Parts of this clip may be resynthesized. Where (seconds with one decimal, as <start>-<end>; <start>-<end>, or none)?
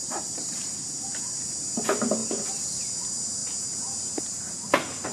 0.0-0.7